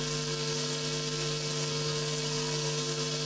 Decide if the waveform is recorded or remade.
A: remade